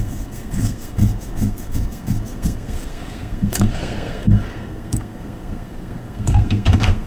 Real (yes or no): no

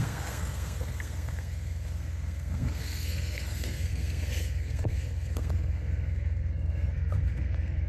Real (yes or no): no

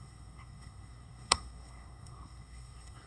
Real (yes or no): no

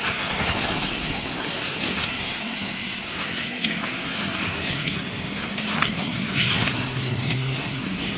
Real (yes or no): no